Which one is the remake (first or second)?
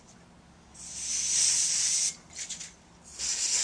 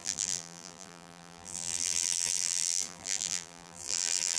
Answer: second